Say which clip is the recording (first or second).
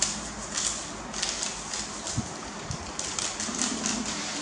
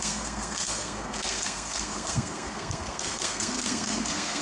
first